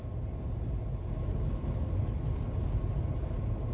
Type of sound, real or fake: real